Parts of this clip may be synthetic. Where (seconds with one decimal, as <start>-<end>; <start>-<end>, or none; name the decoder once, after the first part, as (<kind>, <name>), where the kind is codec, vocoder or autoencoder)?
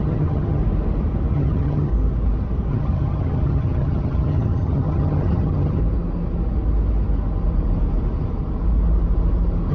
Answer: 0.0-0.6 (vocoder, HiFi-GAN); 1.3-1.9; 2.7-5.8